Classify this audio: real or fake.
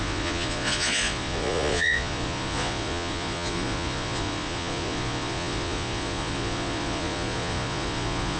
fake